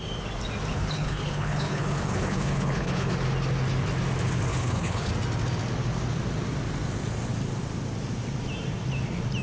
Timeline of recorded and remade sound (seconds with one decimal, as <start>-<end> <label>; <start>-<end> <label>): 0.0-0.7 recorded; 0.7-3.1 remade; 3.1-4.5 recorded; 4.5-5.1 remade; 5.1-9.4 recorded